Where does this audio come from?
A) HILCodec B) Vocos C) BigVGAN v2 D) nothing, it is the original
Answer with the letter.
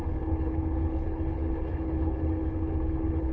A